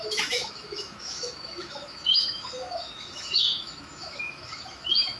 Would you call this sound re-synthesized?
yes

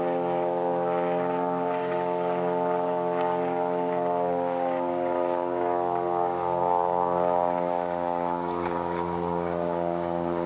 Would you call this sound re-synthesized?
yes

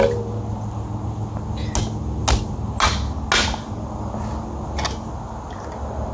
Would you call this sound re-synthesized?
no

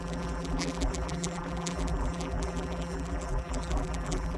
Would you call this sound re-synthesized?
yes